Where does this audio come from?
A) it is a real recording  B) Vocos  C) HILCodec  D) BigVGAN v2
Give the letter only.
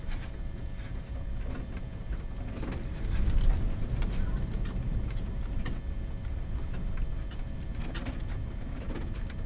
A